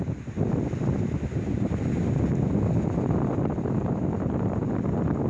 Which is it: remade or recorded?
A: recorded